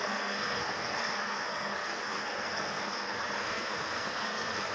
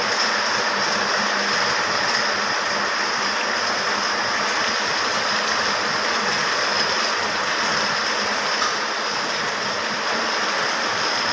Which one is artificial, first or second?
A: first